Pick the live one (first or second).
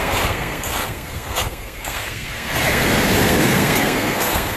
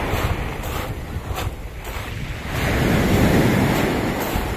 second